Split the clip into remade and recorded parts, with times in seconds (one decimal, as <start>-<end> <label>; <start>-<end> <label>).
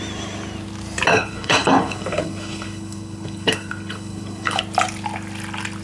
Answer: 0.0-1.1 recorded; 1.1-4.6 remade; 4.6-5.8 recorded